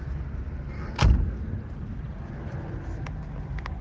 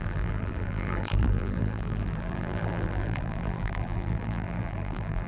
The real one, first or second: first